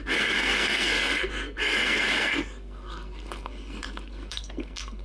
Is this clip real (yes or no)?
no